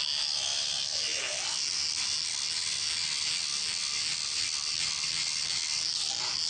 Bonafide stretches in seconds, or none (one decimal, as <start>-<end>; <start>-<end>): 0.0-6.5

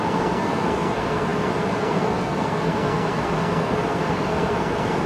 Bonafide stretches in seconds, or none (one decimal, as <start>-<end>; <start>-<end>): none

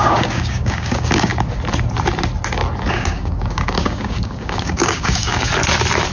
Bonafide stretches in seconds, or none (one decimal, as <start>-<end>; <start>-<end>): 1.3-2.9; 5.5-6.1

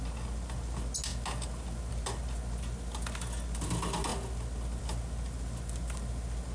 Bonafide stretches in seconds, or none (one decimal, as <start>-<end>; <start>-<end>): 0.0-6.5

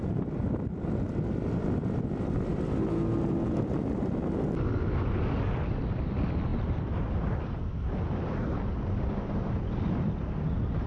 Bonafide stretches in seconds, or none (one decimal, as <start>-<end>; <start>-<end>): 0.0-6.5; 7.6-10.9

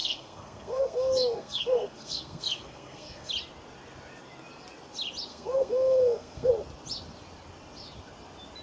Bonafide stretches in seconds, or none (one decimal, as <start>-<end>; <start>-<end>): 3.3-5.3; 6.5-8.6

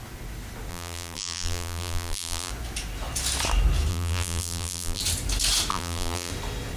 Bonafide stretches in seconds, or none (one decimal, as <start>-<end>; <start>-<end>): 0.0-0.7; 2.5-3.9; 5.0-5.7; 6.3-6.8